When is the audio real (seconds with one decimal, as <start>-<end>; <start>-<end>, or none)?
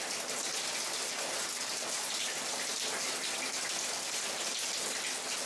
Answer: 0.0-2.2; 4.5-5.5